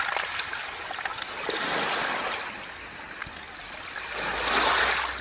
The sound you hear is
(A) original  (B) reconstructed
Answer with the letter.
A